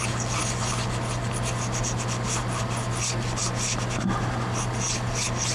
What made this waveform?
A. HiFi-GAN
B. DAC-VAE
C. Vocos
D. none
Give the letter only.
D